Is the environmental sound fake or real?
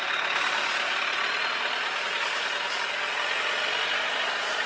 real